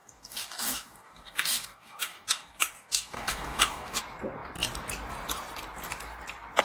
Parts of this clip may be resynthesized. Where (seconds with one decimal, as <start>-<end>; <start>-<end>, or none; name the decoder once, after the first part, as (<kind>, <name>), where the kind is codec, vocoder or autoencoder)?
0.0-4.0 (codec, DAC)